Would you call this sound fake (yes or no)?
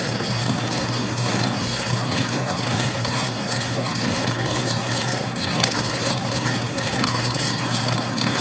yes